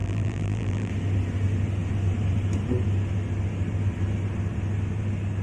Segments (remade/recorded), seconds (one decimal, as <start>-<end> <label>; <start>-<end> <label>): 0.0-0.9 remade; 0.9-5.4 recorded